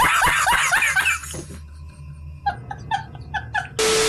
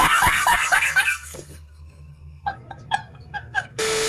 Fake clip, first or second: second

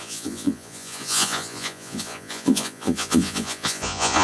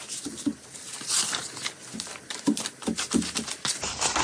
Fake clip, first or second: first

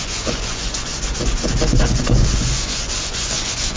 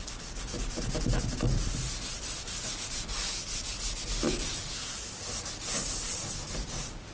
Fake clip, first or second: first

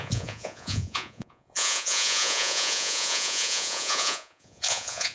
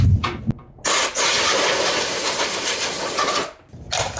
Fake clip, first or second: first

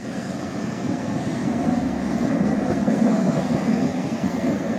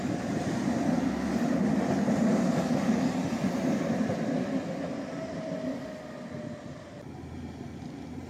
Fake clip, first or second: first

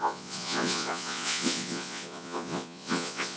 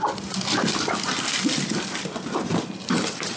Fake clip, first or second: first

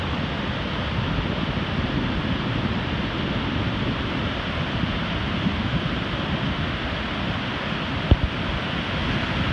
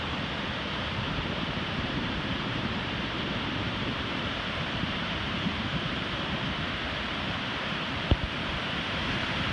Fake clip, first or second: second